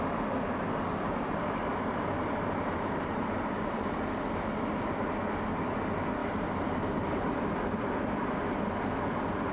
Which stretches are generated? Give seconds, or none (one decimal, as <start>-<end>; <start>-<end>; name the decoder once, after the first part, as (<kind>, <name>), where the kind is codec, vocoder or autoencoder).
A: 1.6-3.8 (vocoder, BigVGAN v2); 6.2-7.5